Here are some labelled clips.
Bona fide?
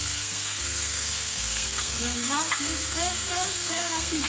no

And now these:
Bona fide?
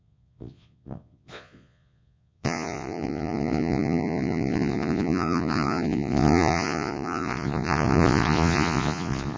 no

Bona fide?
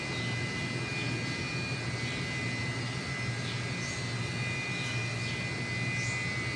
yes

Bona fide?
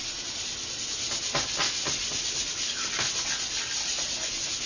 yes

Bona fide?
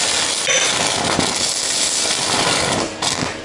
yes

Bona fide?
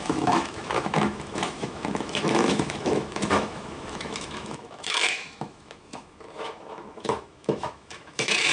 no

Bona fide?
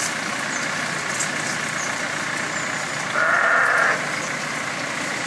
yes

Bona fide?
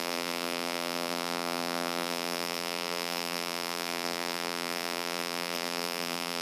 no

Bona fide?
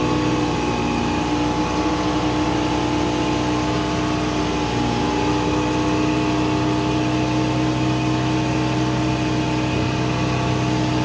yes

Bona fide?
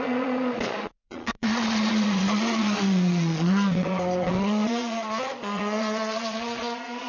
no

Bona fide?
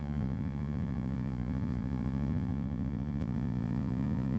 no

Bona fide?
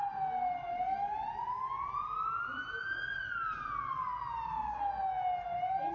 yes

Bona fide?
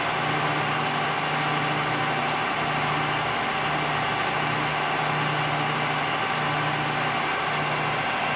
yes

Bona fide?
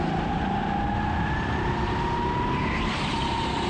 yes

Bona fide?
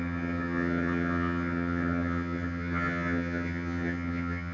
no